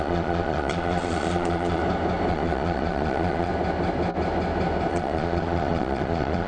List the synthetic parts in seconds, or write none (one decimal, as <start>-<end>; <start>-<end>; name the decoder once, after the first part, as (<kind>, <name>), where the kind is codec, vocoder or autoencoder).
0.0-1.8 (vocoder, Vocos); 2.3-3.5; 4.9-6.5